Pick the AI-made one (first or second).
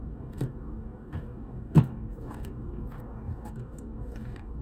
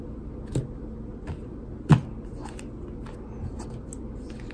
first